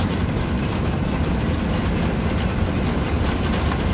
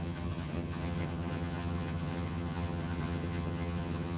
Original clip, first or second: first